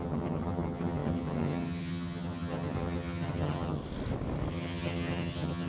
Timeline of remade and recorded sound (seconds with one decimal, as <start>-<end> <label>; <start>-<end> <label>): 0.0-3.8 remade; 3.8-4.5 recorded; 4.5-5.7 remade